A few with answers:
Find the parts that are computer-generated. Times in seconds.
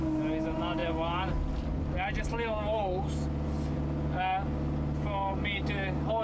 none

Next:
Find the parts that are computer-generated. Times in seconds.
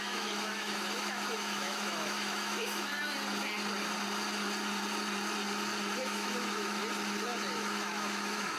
0.0-2.9; 6.0-6.8; 7.5-8.6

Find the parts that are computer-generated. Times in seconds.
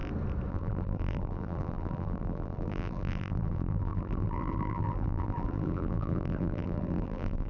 0.5-7.5